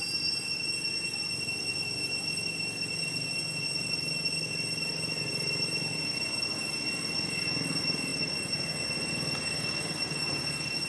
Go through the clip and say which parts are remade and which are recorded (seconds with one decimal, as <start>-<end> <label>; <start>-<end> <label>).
0.0-10.9 recorded